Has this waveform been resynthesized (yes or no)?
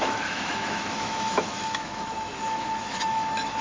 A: yes